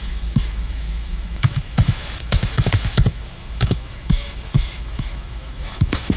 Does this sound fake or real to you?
fake